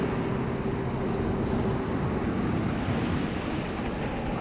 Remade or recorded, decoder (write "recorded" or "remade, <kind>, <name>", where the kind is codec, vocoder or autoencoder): recorded